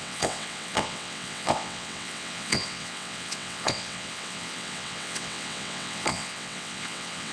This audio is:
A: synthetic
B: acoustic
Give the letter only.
A